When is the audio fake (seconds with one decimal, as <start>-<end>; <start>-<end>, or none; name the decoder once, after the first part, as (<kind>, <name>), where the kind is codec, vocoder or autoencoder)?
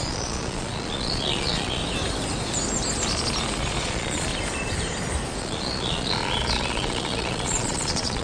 0.0-1.8 (vocoder, Vocos); 3.6-4.3; 5.4-8.2